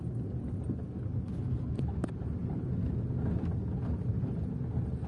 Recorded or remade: recorded